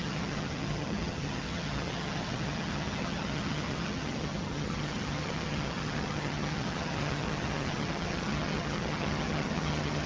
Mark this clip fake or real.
fake